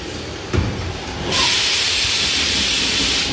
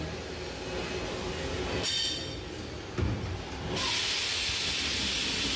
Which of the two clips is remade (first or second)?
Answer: first